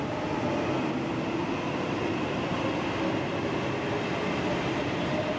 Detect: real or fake real